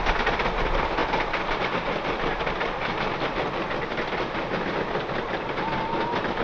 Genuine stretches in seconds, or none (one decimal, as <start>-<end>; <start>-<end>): 0.0-6.4

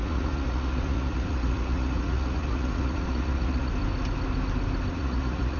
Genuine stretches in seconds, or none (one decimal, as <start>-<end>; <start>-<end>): 3.7-4.9

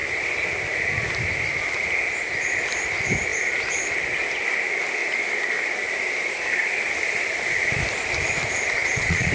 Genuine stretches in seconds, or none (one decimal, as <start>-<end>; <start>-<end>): 0.0-8.8

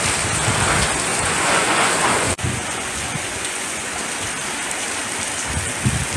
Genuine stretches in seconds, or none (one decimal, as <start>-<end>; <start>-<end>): 0.0-1.1; 3.9-6.2